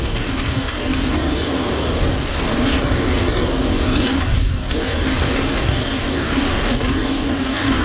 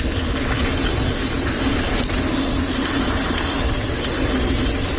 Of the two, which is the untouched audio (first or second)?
second